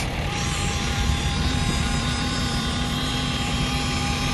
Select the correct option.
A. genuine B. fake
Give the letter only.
B